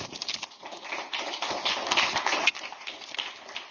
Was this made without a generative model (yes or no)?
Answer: yes